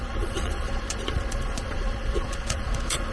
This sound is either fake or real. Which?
fake